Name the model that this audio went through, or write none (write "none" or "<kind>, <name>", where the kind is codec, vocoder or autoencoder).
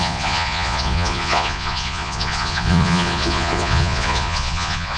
vocoder, Vocos